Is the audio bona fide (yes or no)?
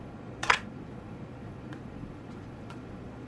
no